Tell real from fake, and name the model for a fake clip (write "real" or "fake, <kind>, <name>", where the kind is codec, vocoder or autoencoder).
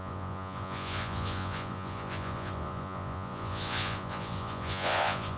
fake, vocoder, Vocos